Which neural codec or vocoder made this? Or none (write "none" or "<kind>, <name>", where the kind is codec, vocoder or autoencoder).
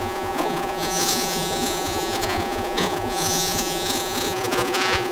vocoder, Vocos